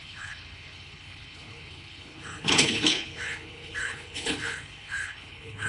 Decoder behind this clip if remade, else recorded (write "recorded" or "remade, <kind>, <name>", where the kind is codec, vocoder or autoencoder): remade, codec, HILCodec